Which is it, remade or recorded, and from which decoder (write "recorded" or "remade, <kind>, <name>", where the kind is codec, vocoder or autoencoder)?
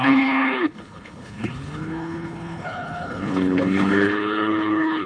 remade, codec, HILCodec